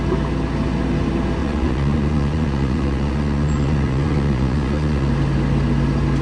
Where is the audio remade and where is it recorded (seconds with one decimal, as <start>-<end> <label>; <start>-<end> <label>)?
0.0-1.4 recorded; 1.4-5.1 remade; 5.1-6.2 recorded